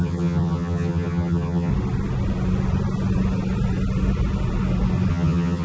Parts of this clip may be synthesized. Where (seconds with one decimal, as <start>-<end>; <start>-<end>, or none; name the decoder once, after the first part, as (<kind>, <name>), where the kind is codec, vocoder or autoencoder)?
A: 0.0-1.7 (vocoder, HiFi-GAN); 5.1-5.6

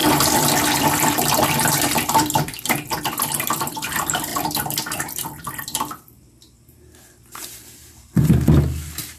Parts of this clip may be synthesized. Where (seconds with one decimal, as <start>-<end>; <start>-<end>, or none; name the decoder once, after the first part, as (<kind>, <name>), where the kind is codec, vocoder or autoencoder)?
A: 0.0-3.0 (vocoder, BigVGAN v2); 4.3-5.5

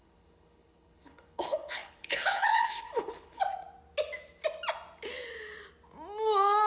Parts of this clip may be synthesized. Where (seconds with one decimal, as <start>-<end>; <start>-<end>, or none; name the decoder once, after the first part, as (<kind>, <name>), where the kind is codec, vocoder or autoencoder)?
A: 0.0-3.4 (codec, HILCodec)

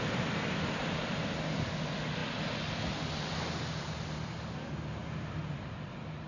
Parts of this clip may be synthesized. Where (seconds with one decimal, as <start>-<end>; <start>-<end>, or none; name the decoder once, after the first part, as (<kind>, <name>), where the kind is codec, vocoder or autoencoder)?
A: none

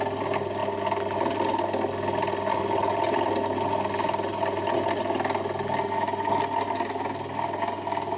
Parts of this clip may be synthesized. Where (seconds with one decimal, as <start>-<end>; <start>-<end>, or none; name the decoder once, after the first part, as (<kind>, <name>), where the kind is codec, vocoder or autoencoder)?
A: none

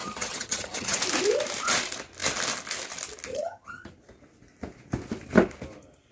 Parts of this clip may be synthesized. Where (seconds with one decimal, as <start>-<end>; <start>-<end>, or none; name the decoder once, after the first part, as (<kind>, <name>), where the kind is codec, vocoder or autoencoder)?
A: 0.0-1.0 (vocoder, HiFi-GAN); 3.3-3.9

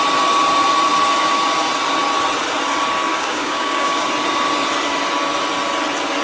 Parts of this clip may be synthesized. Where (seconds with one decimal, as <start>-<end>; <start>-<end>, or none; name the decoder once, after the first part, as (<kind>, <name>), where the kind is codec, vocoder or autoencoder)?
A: 3.1-4.1 (codec, DAC)

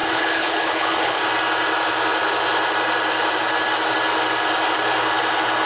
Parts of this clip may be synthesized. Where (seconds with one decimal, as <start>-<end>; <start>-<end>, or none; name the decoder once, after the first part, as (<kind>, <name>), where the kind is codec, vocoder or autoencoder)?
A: 0.0-1.2 (codec, HILCodec)